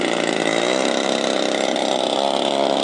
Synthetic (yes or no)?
yes